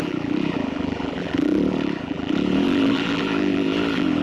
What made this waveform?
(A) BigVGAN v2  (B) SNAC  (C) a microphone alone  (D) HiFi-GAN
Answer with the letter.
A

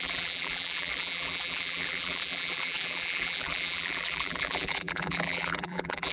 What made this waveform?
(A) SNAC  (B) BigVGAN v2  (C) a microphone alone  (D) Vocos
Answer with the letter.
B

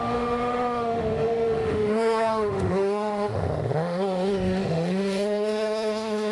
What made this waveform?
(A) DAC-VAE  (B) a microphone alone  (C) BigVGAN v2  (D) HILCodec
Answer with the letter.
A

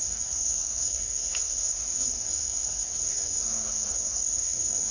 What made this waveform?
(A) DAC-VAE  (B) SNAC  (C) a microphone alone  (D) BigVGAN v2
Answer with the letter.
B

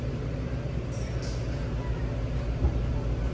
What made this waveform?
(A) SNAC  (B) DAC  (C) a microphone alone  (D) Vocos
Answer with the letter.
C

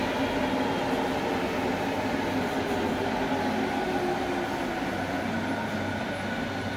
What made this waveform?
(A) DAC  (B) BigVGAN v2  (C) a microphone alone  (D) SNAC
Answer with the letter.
C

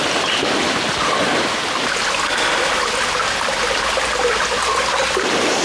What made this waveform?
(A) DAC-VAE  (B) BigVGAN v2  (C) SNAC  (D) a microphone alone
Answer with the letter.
D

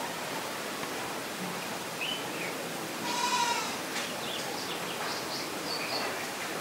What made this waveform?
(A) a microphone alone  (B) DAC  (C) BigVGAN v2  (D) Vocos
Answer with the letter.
A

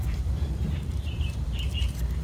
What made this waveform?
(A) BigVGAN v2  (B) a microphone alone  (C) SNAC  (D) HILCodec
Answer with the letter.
A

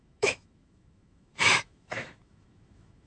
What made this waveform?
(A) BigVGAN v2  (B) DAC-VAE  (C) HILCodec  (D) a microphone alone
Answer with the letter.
B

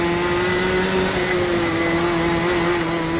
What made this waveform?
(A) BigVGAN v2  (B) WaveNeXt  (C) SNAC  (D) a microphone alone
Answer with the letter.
D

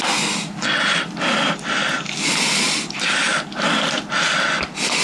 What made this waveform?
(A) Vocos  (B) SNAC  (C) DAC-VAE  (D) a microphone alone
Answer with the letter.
D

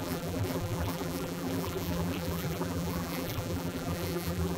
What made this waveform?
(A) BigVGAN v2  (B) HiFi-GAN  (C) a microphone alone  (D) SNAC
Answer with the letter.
A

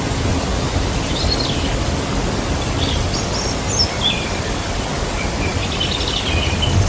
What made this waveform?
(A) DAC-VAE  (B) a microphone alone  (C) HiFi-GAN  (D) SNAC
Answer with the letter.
B